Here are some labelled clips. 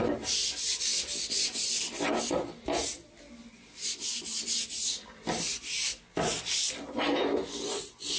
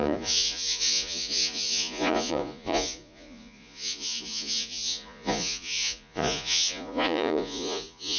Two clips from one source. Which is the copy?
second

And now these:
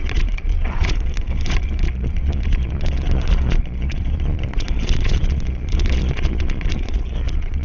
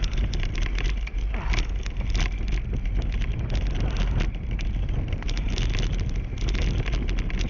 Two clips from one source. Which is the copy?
first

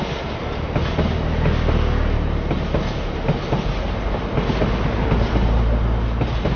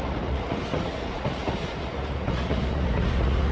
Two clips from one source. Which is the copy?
second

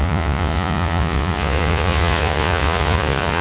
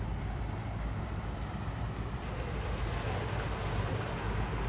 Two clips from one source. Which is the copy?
first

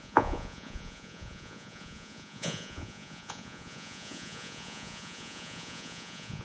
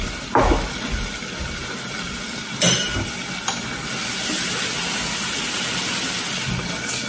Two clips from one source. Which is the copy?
first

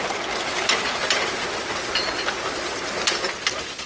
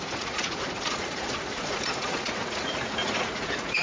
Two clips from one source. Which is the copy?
second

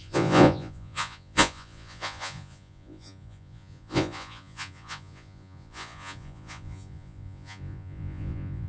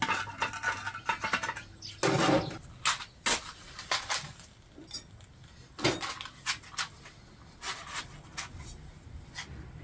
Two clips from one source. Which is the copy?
first